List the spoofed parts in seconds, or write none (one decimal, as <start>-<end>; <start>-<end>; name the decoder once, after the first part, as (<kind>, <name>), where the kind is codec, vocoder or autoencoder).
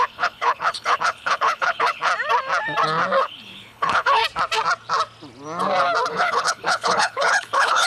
0.0-2.1 (codec, HILCodec); 3.2-4.2; 6.1-7.9